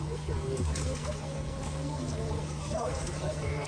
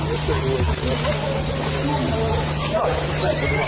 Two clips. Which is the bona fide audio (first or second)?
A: second